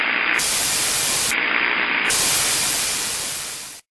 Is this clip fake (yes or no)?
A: yes